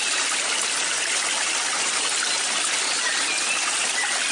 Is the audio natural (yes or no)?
yes